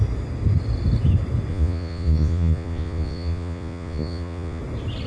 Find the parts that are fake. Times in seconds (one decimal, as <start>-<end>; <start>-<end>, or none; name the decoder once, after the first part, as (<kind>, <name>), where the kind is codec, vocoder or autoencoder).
1.5-4.6 (vocoder, Vocos)